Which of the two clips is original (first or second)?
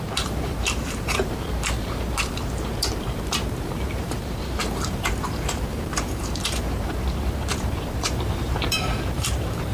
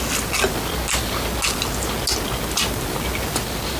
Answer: second